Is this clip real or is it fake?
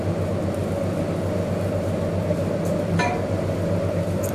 real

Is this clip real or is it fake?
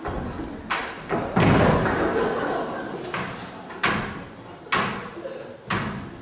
real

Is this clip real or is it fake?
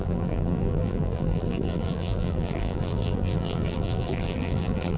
fake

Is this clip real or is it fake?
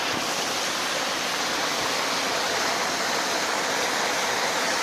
real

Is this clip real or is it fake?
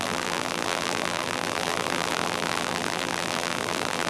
fake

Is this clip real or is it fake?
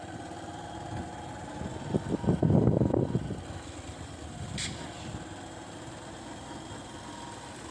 real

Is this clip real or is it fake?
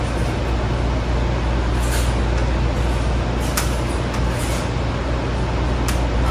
real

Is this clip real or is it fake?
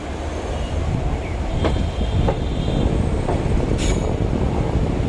fake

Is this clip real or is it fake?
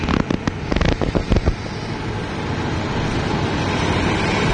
real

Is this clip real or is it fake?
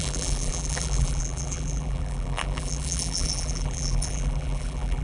fake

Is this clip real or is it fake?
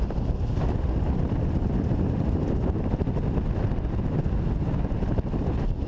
fake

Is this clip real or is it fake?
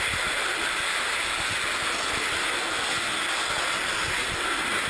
real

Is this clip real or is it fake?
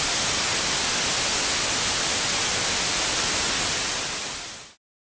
real